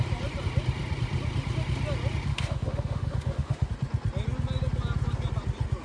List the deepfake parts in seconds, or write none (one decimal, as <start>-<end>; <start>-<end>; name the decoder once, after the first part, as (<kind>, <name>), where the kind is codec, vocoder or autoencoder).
2.3-3.7 (autoencoder, DAC-VAE)